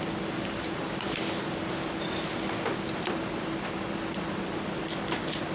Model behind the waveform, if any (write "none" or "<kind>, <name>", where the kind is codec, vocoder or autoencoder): vocoder, BigVGAN v2